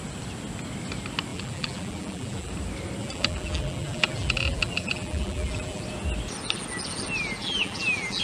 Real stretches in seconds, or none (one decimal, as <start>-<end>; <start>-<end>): 0.0-1.3; 2.5-3.0; 5.8-7.4